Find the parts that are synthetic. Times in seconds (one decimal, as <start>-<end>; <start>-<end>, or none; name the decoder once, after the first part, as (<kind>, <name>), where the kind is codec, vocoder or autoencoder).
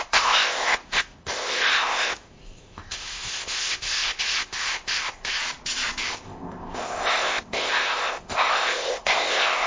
0.0-5.4 (codec, ZipCodec); 6.0-9.7